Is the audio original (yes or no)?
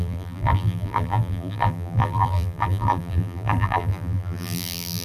no